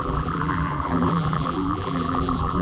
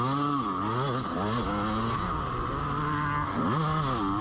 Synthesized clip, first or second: first